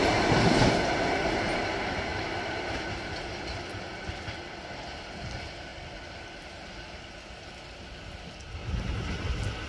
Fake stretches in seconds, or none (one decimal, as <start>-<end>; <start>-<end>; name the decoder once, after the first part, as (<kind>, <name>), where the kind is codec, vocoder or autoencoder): 5.7-6.5 (vocoder, BigVGAN v2); 8.6-9.1